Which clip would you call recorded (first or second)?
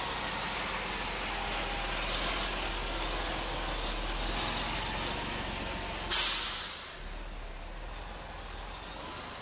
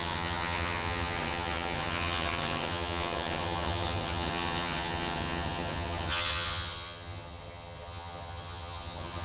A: first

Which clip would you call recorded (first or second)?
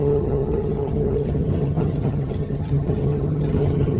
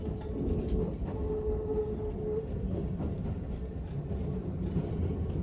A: second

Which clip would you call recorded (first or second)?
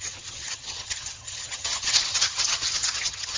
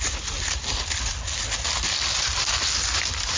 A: second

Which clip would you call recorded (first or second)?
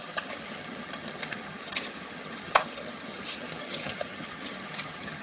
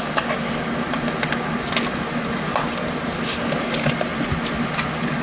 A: second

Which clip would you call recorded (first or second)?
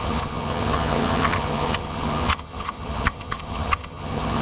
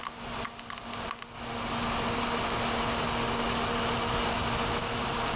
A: second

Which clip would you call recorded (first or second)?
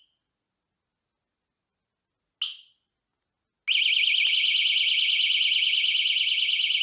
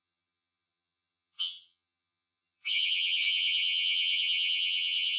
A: first